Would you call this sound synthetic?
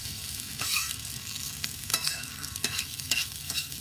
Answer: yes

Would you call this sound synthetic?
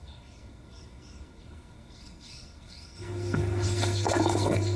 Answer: yes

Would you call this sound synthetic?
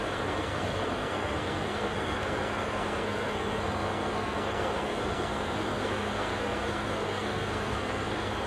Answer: yes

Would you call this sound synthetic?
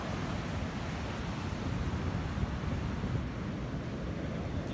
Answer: no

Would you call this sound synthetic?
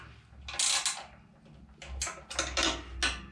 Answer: no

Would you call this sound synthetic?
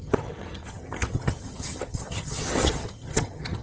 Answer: yes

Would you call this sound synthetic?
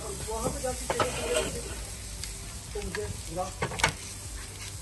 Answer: no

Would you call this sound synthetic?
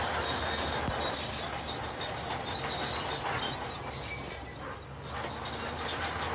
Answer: no